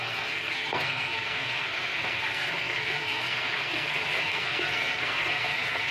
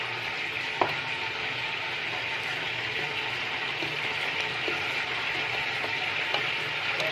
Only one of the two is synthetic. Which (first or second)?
first